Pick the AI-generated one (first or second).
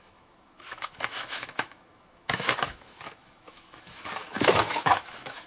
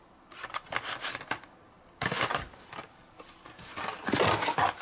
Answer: first